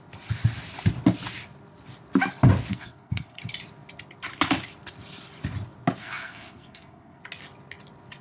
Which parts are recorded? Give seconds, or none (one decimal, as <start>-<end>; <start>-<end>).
0.0-2.7; 3.4-6.0; 7.2-8.2